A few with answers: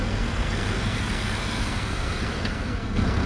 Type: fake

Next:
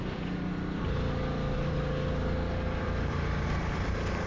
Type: fake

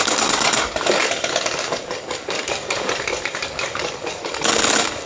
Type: fake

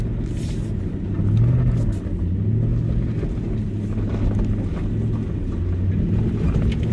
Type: real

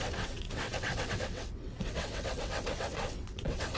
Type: fake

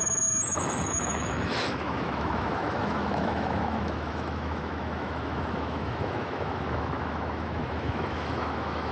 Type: fake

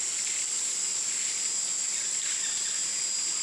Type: real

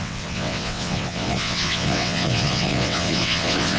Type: fake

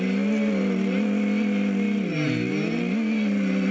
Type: real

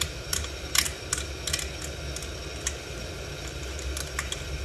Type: real